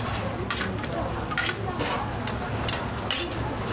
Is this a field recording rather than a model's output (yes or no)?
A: yes